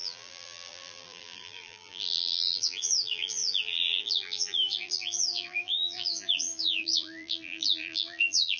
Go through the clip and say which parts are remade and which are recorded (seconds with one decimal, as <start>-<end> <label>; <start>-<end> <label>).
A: 0.0-8.6 remade